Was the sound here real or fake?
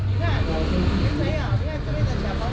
real